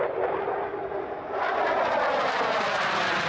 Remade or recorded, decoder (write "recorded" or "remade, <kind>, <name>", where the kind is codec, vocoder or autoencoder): recorded